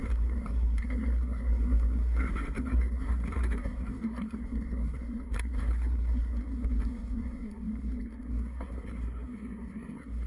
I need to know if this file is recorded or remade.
remade